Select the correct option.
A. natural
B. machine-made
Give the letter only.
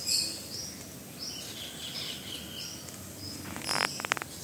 A